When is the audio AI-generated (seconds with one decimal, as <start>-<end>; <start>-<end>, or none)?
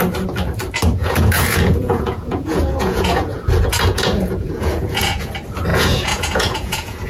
1.0-5.3; 5.7-7.1